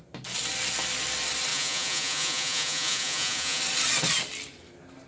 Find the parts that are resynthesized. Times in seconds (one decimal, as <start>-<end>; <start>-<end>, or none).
1.5-3.6